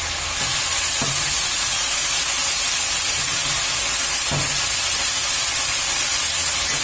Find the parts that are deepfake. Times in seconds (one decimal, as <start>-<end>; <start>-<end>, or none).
none